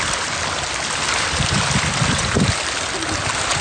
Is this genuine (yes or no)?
yes